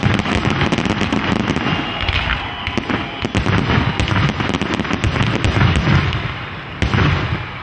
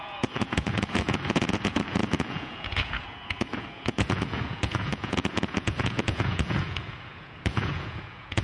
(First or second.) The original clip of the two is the first